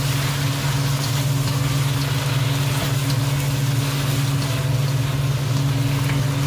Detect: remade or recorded recorded